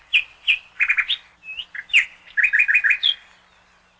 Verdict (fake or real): real